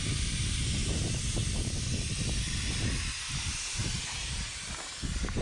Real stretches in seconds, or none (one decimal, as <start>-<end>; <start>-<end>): 0.0-5.4